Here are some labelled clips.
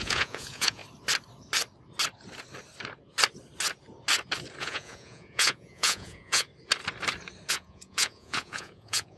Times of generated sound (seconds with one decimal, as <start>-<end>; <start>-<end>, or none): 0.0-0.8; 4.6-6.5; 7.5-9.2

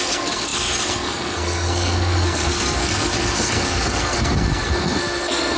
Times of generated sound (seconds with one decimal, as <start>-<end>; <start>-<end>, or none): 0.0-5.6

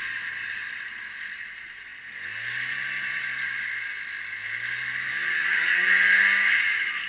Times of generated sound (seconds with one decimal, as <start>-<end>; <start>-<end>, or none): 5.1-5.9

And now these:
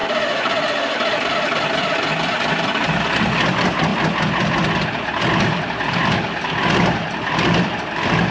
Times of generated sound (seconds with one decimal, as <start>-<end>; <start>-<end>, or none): 2.3-3.9; 5.8-8.3

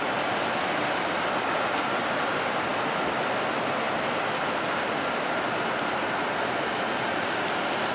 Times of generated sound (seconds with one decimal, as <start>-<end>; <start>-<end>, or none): none